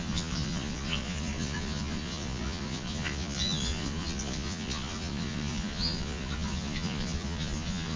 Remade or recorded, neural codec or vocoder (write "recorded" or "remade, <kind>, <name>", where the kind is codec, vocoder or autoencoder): remade, vocoder, Vocos